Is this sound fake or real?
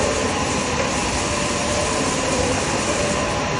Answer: real